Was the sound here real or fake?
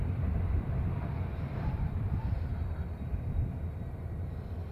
real